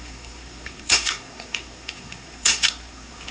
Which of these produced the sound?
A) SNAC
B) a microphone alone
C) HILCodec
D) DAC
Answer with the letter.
A